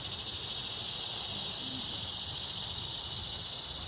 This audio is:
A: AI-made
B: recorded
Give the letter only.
B